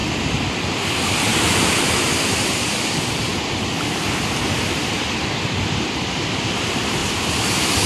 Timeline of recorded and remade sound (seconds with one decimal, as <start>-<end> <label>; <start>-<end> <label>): 0.0-1.5 recorded; 1.5-3.3 remade; 3.3-4.2 recorded; 4.2-7.9 remade